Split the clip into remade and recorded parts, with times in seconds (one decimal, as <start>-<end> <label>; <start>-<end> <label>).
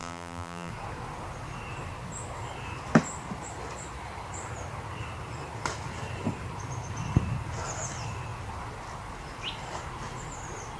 0.0-0.7 remade; 0.7-10.8 recorded